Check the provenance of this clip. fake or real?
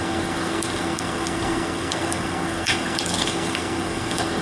fake